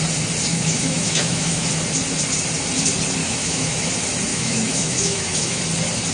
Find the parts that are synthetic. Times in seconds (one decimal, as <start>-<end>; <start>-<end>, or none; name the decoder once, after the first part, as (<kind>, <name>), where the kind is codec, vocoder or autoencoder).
0.5-1.7 (autoencoder, DAC-VAE); 3.2-3.9; 4.3-5.6